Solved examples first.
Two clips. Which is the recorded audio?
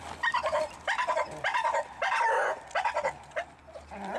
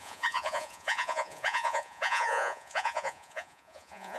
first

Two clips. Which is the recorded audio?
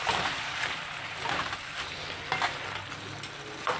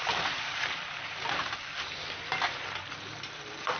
first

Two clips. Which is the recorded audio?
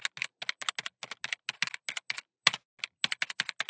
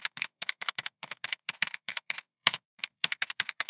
first